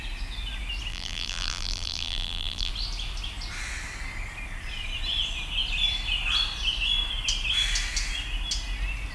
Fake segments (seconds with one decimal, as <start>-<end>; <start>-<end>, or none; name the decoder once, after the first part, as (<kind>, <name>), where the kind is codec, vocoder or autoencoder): 0.9-2.7 (vocoder, BigVGAN v2)